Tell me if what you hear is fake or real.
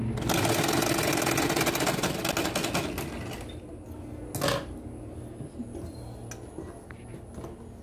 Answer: real